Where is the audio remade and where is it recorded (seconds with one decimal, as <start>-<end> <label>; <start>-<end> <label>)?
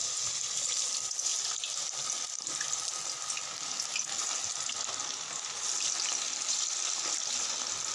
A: 0.0-7.9 recorded